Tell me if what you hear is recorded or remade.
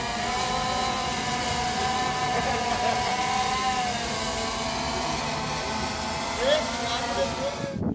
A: recorded